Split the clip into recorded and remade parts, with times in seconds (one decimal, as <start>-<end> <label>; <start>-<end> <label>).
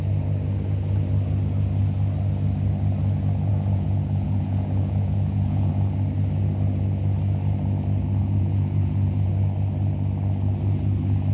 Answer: 0.0-3.5 recorded; 3.5-5.7 remade; 5.7-8.2 recorded; 8.2-9.3 remade; 9.3-11.3 recorded